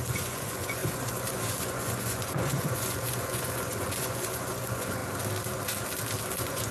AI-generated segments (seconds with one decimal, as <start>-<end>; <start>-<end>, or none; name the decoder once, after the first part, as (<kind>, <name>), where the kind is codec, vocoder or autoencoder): 0.0-5.0 (vocoder, Vocos); 6.3-6.7